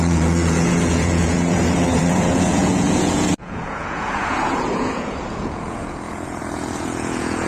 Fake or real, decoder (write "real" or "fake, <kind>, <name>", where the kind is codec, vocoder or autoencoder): fake, vocoder, Vocos